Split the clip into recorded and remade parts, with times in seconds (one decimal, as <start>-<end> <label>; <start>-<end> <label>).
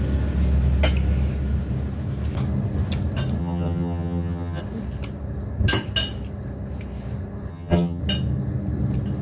0.0-3.4 recorded; 3.4-4.6 remade; 4.6-7.5 recorded; 7.5-8.0 remade; 8.0-9.2 recorded